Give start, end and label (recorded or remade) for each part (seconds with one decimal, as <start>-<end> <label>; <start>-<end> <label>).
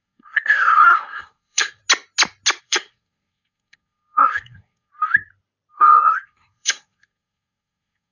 0.0-1.8 remade; 1.8-2.6 recorded; 2.6-4.9 remade; 4.9-5.7 recorded; 5.7-8.1 remade